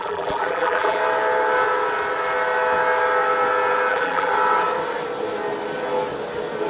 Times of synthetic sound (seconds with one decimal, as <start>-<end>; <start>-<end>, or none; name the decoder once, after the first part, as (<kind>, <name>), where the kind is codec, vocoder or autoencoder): 0.0-1.0 (vocoder, BigVGAN v2); 3.9-4.3